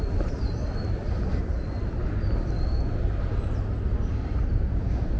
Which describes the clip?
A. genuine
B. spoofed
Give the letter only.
A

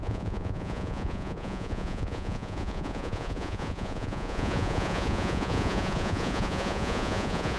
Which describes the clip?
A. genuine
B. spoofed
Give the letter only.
B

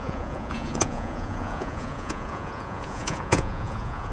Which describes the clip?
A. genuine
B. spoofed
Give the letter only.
B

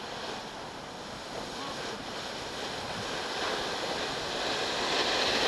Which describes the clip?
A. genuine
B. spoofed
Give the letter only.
A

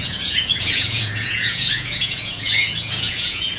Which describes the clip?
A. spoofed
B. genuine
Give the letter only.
A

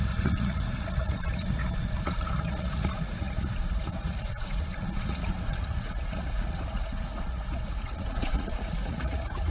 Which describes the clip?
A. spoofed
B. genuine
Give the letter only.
A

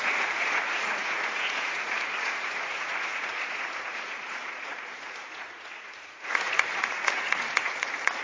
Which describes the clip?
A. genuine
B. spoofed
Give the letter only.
B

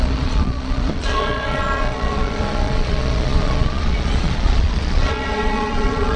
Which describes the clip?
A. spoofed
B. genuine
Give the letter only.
A